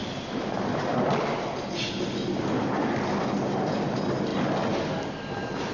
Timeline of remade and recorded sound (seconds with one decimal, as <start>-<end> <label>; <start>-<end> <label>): 0.0-5.7 recorded